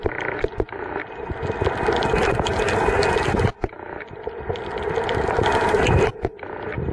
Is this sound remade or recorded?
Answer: recorded